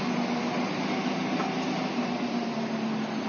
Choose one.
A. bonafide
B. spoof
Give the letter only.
A